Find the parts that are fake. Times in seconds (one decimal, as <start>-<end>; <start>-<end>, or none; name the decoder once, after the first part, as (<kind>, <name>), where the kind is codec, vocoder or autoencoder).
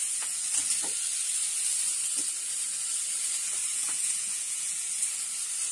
0.0-0.5 (vocoder, Vocos); 3.7-4.9